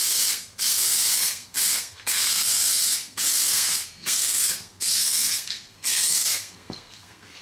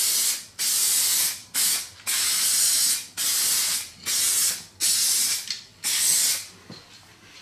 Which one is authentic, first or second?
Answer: second